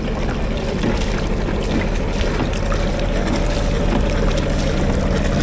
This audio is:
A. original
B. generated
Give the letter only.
A